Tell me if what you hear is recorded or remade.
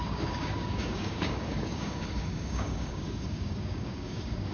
remade